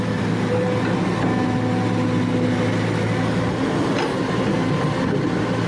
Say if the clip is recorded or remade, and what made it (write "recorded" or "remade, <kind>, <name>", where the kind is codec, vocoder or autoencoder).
recorded